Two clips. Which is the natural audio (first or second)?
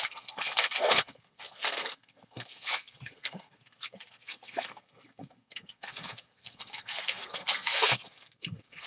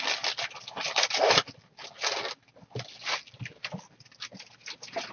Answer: second